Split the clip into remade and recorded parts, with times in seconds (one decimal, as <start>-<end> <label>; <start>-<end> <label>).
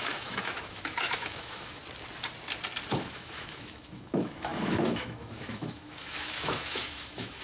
0.0-1.8 remade; 1.8-2.9 recorded; 2.9-7.4 remade